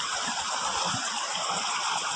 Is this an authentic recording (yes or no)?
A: no